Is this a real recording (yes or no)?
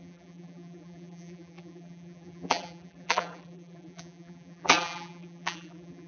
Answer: no